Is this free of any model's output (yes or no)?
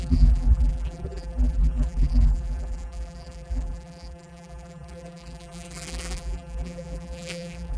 no